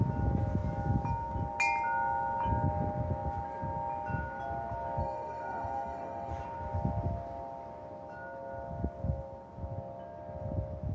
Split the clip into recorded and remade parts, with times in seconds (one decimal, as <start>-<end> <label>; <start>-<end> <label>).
0.0-5.0 recorded; 5.0-6.3 remade; 6.3-10.9 recorded